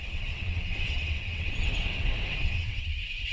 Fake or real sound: fake